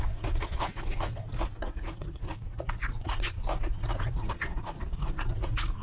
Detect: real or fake fake